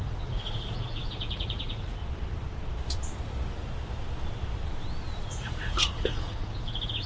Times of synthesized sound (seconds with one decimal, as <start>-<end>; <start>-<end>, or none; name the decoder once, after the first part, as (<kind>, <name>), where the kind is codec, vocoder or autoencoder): 0.0-2.0 (vocoder, Vocos); 5.3-7.1